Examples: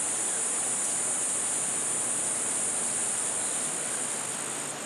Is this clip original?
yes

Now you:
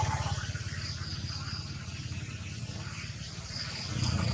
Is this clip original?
yes